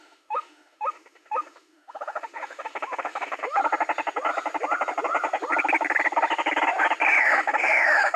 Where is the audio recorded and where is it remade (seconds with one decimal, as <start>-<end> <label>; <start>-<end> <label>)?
0.0-3.6 remade; 3.6-7.2 recorded; 7.2-8.2 remade

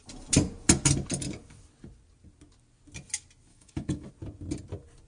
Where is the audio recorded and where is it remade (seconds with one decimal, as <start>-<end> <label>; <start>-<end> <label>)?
0.0-3.5 recorded; 3.5-4.1 remade; 4.1-5.1 recorded

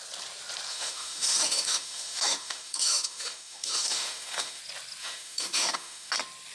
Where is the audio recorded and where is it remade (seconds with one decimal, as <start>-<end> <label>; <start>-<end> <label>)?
0.0-0.7 recorded; 0.7-4.6 remade; 4.6-5.0 recorded; 5.0-6.1 remade; 6.1-6.5 recorded

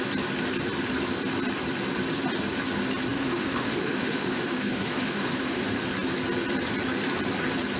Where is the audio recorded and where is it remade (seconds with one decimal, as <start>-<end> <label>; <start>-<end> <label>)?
0.0-3.1 recorded; 3.1-5.6 remade; 5.6-7.8 recorded

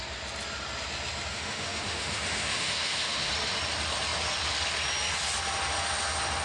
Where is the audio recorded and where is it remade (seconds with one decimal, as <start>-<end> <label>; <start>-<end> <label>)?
0.0-1.3 recorded; 1.3-3.3 remade; 3.3-6.4 recorded

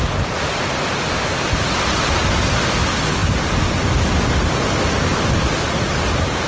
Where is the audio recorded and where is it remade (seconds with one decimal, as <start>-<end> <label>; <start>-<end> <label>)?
0.0-6.5 recorded

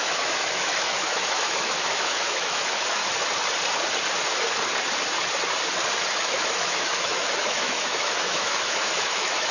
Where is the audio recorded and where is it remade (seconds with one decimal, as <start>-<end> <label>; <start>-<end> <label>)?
0.0-3.0 remade; 3.0-6.2 recorded; 6.2-9.5 remade